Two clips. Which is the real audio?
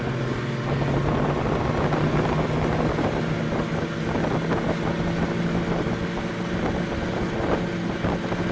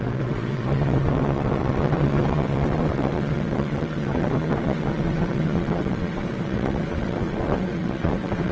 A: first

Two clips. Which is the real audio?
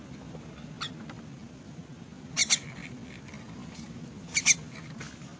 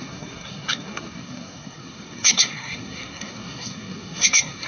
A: first